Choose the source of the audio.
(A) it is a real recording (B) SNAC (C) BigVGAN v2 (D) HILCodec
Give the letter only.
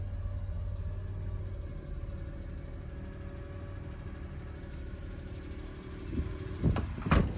A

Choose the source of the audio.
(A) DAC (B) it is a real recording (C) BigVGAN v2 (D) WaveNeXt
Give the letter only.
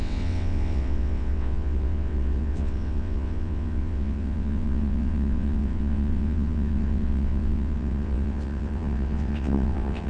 D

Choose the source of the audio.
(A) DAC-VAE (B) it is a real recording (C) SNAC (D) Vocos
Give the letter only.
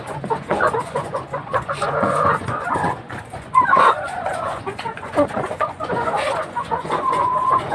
D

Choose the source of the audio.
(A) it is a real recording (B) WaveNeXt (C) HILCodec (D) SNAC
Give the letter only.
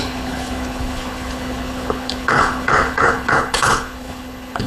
C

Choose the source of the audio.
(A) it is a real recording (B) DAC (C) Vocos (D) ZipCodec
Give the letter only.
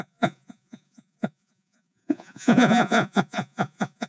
C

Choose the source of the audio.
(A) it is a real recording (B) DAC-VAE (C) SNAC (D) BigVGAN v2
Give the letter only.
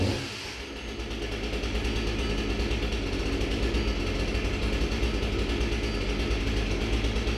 A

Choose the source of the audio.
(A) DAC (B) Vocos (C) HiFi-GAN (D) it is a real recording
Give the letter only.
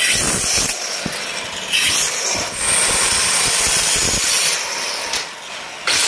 D